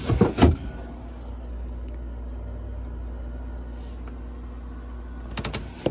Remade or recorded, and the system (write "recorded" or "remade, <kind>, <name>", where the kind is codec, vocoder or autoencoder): recorded